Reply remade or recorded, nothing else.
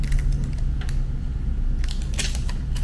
recorded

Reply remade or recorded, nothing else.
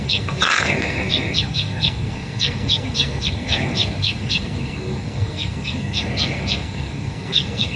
remade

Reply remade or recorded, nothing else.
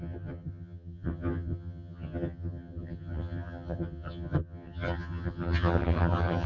remade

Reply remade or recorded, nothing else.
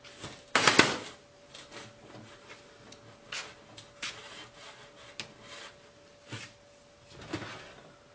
recorded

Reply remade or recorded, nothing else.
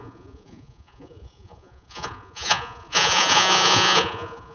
remade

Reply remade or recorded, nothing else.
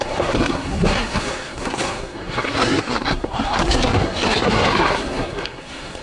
remade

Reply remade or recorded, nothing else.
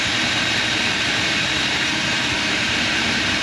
remade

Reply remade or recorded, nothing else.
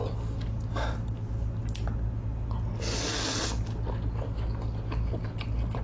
recorded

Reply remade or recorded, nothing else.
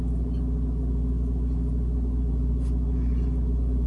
recorded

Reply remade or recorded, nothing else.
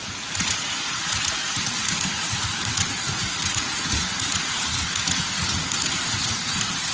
remade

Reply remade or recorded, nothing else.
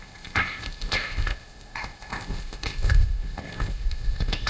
remade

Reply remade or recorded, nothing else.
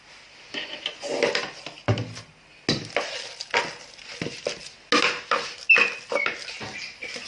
recorded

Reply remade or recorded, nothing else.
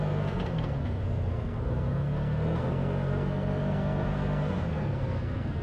remade